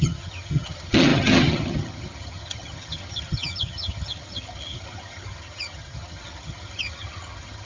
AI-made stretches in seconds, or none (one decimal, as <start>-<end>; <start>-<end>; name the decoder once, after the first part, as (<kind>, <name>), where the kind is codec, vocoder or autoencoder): 0.0-7.7 (vocoder, HiFi-GAN)